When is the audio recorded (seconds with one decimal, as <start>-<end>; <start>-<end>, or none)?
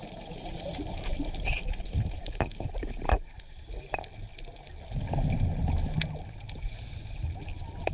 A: 3.7-7.9